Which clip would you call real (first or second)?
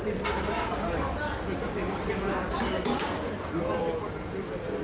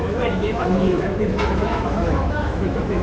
first